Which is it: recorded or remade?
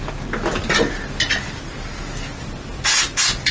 recorded